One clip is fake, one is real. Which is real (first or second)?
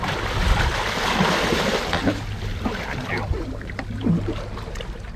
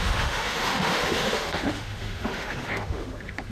first